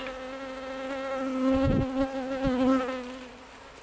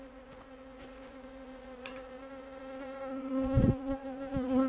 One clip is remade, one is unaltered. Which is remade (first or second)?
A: second